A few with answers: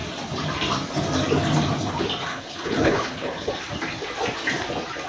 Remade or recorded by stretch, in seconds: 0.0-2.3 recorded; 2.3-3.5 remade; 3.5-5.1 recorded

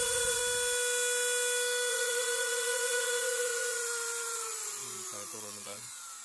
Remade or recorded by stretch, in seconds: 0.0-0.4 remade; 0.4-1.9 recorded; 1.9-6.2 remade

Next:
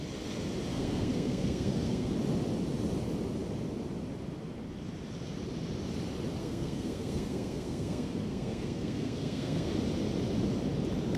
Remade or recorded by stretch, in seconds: 0.0-0.7 recorded; 0.7-2.1 remade; 2.1-6.4 recorded; 6.4-9.7 remade; 9.7-11.2 recorded

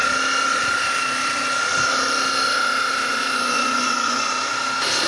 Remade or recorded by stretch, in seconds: 0.0-3.1 recorded; 3.1-4.3 remade; 4.3-5.1 recorded